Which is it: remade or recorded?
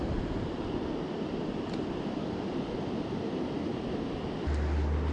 recorded